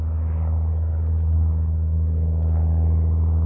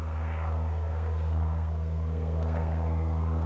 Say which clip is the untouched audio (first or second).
first